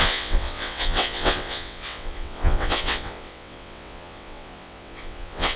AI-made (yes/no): yes